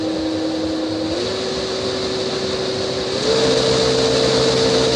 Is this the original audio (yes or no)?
yes